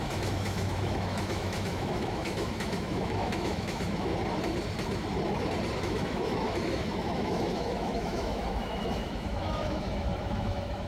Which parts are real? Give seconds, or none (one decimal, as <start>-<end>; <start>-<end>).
4.1-5.8